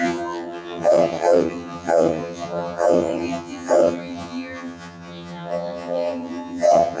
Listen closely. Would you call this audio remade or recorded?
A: remade